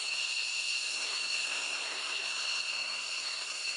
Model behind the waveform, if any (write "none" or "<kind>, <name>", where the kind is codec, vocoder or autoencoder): codec, SNAC